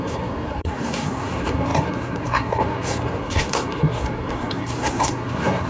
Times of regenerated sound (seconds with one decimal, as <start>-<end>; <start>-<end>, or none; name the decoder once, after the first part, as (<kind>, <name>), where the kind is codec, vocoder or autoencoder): 0.0-5.7 (codec, SNAC)